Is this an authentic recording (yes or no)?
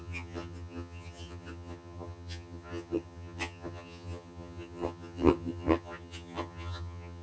no